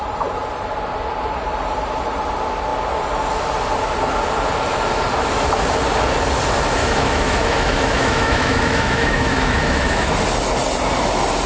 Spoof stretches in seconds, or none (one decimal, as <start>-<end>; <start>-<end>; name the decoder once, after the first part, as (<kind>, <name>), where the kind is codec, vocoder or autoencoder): 6.8-10.1 (autoencoder, DAC-VAE)